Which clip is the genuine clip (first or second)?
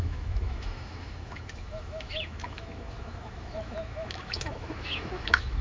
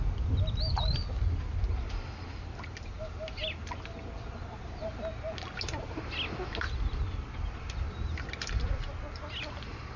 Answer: second